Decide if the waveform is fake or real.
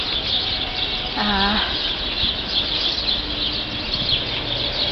real